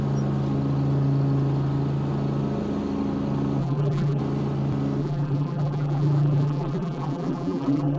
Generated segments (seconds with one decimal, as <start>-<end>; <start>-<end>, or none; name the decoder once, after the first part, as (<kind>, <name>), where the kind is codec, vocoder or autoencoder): 3.6-4.2 (vocoder, BigVGAN v2); 5.0-8.0